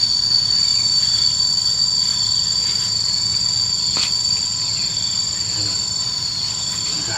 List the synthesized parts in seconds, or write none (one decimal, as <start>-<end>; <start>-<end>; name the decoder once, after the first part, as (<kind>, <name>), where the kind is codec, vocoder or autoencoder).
0.7-1.5 (vocoder, BigVGAN v2); 2.1-2.6; 5.7-6.3